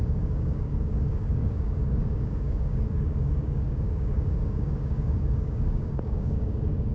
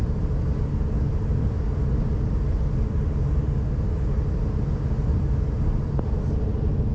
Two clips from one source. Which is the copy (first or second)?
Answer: first